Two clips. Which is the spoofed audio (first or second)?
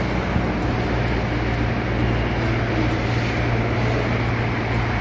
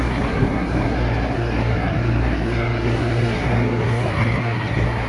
second